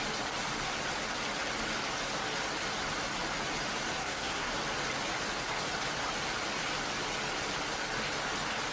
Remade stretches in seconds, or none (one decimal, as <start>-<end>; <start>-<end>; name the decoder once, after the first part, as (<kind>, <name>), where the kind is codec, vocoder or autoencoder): 4.0-4.5 (codec, SNAC)